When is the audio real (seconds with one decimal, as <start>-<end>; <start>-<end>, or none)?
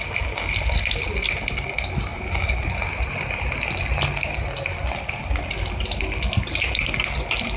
0.0-7.6